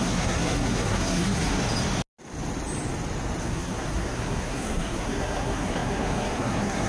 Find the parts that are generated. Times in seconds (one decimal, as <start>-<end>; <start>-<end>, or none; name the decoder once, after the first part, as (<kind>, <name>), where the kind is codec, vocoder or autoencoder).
0.0-1.6 (codec, SNAC); 3.4-6.9